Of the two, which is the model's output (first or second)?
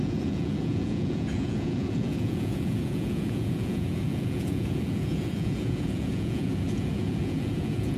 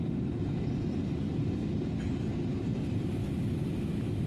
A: first